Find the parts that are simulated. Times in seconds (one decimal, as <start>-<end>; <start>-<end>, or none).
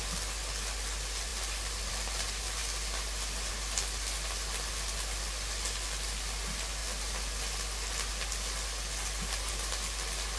none